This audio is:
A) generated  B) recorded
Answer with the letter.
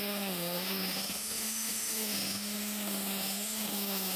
A